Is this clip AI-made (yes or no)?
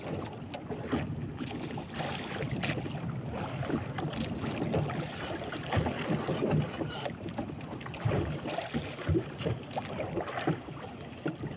no